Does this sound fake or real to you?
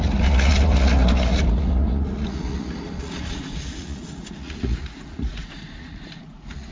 fake